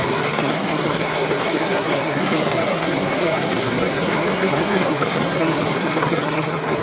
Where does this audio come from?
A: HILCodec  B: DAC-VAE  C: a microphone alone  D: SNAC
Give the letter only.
D